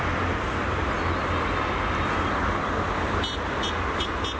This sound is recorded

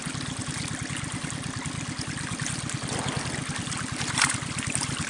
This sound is recorded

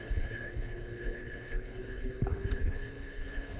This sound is remade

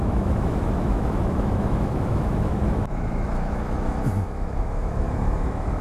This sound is remade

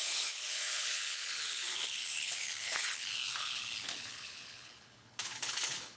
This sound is remade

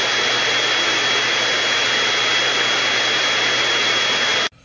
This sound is recorded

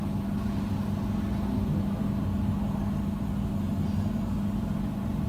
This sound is recorded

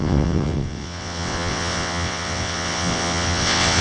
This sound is remade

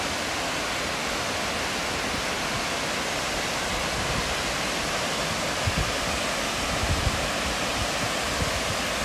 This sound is recorded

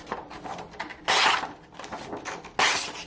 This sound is recorded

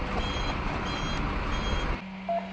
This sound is recorded